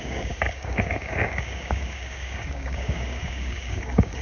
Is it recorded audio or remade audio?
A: remade